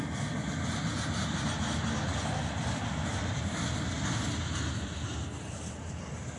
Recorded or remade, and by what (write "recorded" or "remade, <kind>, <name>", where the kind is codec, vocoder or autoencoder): recorded